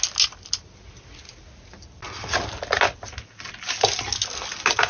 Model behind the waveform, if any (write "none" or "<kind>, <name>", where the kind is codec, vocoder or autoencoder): none